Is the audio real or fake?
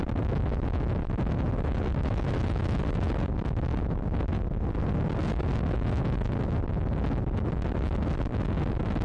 real